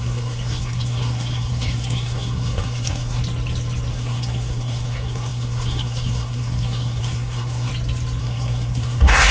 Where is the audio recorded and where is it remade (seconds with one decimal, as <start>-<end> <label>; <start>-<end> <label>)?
0.0-3.2 remade; 3.2-3.9 recorded; 3.9-7.7 remade; 7.7-8.2 recorded; 8.2-9.3 remade